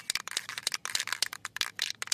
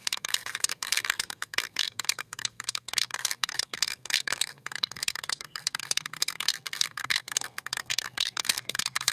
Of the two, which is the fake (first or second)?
second